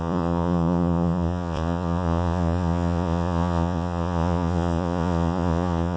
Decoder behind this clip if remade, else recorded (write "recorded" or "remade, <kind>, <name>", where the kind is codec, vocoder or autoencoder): remade, vocoder, Vocos